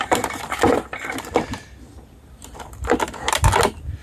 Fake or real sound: real